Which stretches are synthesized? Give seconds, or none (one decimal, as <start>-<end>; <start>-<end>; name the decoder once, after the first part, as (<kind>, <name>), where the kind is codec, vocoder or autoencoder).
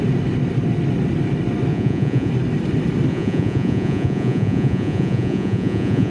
1.7-2.3 (vocoder, Vocos); 3.1-6.1